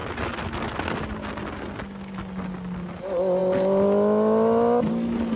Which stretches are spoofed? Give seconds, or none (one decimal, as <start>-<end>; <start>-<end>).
none